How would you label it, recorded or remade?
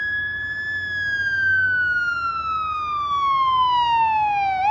recorded